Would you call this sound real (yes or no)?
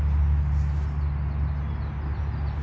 yes